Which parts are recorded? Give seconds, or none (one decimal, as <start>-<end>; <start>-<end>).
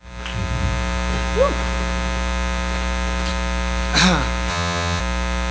0.0-4.5; 5.0-5.5